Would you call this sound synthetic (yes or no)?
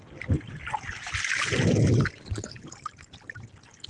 no